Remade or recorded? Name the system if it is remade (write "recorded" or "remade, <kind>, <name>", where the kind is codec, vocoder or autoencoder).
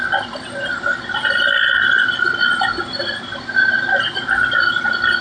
recorded